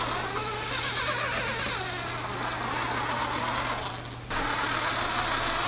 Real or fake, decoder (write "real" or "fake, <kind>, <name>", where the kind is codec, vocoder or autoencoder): real